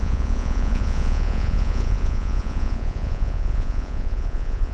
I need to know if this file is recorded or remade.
remade